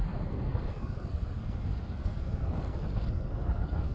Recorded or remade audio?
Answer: remade